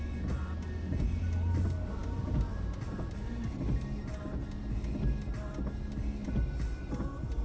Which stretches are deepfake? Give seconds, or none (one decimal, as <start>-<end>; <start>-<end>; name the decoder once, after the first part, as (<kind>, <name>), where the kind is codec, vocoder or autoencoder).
none